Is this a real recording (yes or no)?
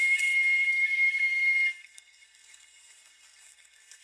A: no